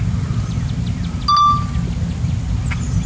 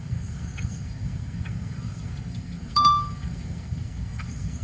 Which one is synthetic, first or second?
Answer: second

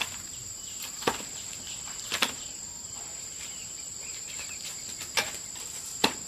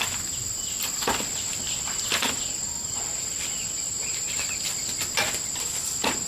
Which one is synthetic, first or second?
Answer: first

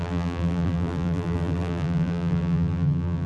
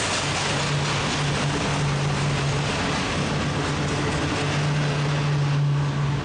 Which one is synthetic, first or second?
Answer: first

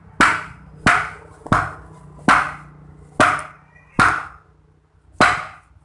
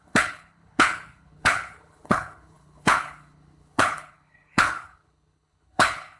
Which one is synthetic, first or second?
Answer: second